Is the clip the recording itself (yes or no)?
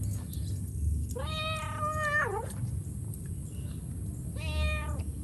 yes